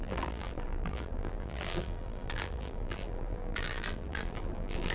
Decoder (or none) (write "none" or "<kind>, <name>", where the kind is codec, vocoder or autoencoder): vocoder, BigVGAN v2